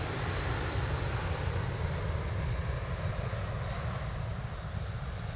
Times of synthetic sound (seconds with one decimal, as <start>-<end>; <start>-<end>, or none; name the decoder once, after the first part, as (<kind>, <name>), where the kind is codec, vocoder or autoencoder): 4.3-5.4 (vocoder, BigVGAN v2)